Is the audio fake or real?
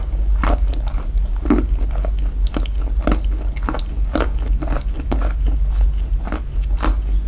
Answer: real